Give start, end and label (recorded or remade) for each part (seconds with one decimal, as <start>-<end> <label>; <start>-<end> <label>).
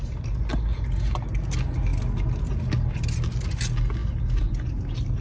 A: 0.0-5.2 recorded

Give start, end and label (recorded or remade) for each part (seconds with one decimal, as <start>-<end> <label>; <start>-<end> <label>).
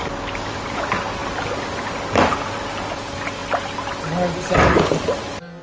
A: 0.0-5.6 recorded